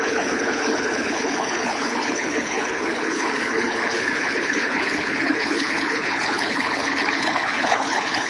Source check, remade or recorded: remade